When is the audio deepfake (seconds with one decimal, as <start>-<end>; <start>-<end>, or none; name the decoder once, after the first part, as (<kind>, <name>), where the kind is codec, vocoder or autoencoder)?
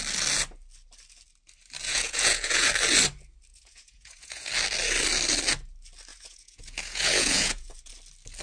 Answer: 1.8-2.7 (vocoder, Vocos); 3.5-4.5; 6.1-7.9